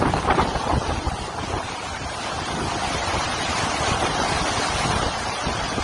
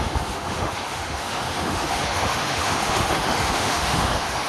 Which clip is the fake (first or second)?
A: second